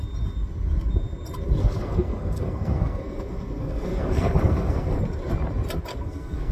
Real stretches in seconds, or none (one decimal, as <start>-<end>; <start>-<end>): 0.0-1.6; 5.0-5.9